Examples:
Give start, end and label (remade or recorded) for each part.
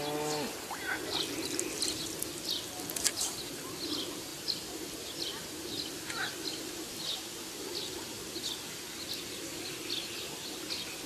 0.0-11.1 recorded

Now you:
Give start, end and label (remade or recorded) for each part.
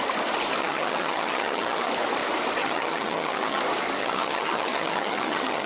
0.0-0.6 recorded; 0.6-1.9 remade; 1.9-2.6 recorded; 2.6-3.6 remade; 3.6-4.0 recorded; 4.0-5.7 remade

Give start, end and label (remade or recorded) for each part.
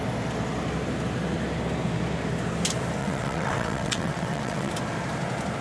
0.0-3.0 recorded; 3.0-4.7 remade; 4.7-5.6 recorded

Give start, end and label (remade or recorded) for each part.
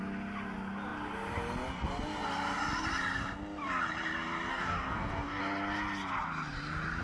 0.0-4.5 recorded; 4.5-5.4 remade; 5.4-7.0 recorded